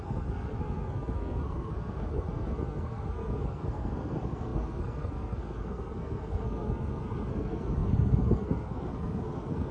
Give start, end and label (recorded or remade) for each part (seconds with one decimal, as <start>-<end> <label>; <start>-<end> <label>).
0.0-9.7 remade